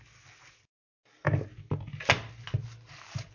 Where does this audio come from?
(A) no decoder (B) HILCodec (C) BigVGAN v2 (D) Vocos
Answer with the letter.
A